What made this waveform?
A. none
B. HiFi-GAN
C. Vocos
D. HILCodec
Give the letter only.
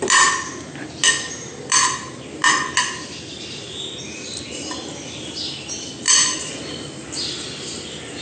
A